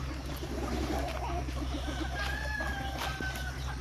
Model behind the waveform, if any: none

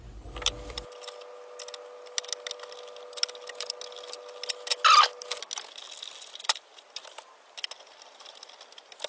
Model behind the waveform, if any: none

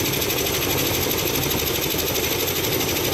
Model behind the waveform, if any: none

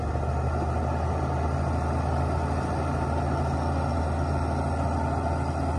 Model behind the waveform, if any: none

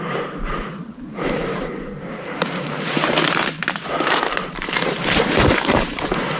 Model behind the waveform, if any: vocoder, BigVGAN v2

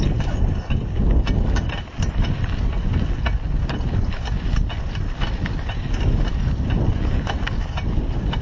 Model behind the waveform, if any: none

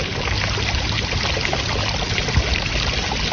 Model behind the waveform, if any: none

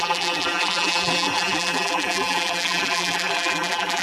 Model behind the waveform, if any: vocoder, BigVGAN v2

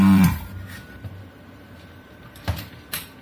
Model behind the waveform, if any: vocoder, BigVGAN v2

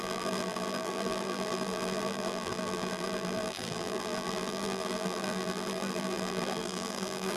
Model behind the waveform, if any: vocoder, BigVGAN v2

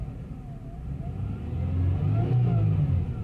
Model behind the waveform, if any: none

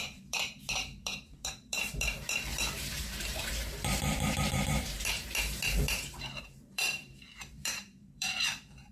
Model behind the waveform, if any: vocoder, BigVGAN v2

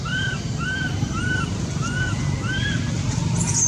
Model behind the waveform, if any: none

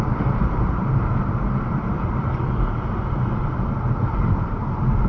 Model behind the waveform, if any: vocoder, BigVGAN v2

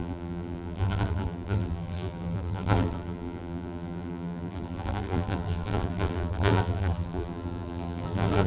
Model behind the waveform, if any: vocoder, BigVGAN v2